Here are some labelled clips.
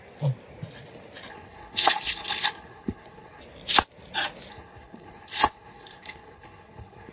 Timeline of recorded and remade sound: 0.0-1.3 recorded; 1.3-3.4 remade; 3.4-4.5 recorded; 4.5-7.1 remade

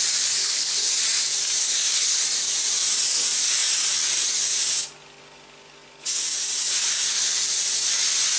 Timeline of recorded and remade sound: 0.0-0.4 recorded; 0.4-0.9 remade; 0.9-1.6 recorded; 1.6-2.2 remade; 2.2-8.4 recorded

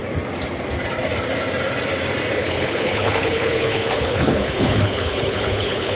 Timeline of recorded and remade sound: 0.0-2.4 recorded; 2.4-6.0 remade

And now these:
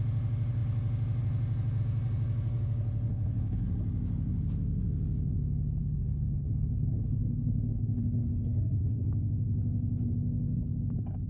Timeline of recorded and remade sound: 0.0-3.1 recorded; 3.1-3.7 remade; 3.7-5.8 recorded; 5.8-9.0 remade; 9.0-11.3 recorded

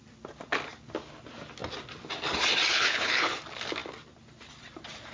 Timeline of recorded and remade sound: 0.0-2.7 recorded; 2.7-3.4 remade; 3.4-5.1 recorded